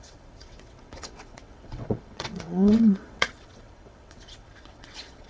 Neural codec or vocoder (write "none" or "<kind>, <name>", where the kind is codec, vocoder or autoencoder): vocoder, WaveNeXt